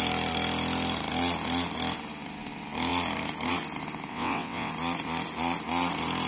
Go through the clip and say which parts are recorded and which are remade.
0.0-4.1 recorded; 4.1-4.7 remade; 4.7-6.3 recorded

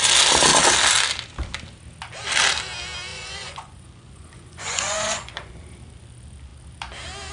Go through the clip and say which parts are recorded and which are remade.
0.0-3.1 recorded; 3.1-5.5 remade; 5.5-7.3 recorded

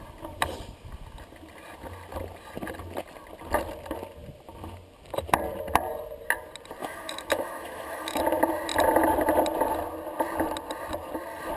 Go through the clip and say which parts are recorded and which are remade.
0.0-6.8 recorded; 6.8-8.2 remade; 8.2-11.6 recorded

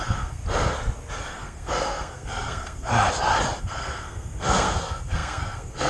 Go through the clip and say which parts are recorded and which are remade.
0.0-0.4 remade; 0.4-1.2 recorded; 1.2-2.9 remade; 2.9-3.6 recorded; 3.6-5.9 remade

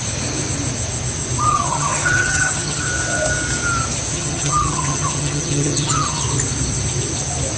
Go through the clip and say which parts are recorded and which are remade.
0.0-1.5 recorded; 1.5-2.8 remade; 2.8-4.1 recorded; 4.1-6.2 remade; 6.2-7.6 recorded

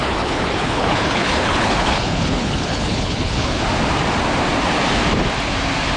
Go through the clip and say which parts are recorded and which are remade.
0.0-3.6 remade; 3.6-6.0 recorded

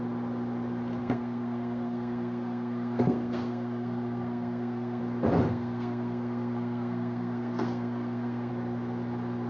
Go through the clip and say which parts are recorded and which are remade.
0.0-1.0 recorded; 1.0-5.0 remade; 5.0-5.5 recorded; 5.5-8.5 remade; 8.5-9.5 recorded

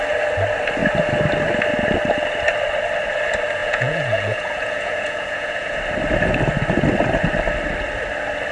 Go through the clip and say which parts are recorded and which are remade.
0.0-3.6 recorded; 3.6-5.8 remade; 5.8-8.5 recorded